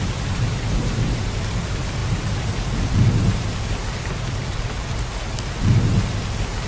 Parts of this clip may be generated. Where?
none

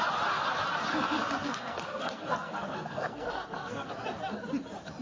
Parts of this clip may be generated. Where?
0.9-3.9 (codec, SNAC)

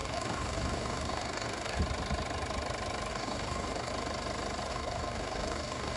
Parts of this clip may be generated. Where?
0.0-1.8 (codec, DAC); 3.1-3.9; 4.7-6.0

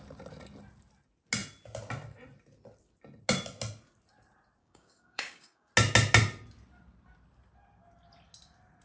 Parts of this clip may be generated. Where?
4.6-5.7 (codec, DAC)

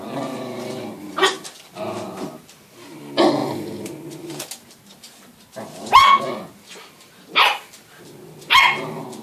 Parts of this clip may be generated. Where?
none